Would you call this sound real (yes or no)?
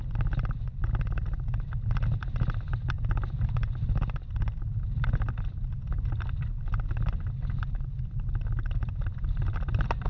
yes